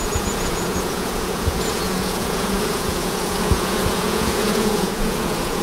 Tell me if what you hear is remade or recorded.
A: remade